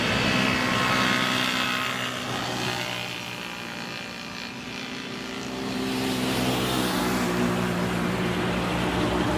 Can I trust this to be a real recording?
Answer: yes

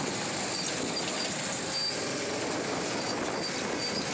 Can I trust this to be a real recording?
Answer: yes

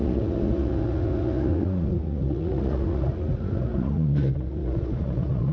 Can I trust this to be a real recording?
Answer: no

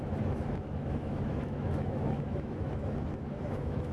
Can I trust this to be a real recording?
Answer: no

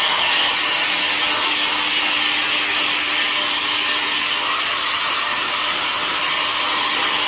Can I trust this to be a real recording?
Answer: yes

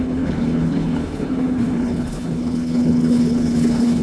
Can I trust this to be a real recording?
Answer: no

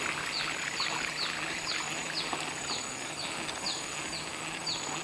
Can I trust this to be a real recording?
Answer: yes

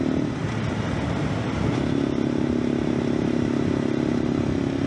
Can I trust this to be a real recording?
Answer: yes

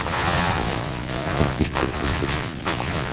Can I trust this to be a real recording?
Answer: no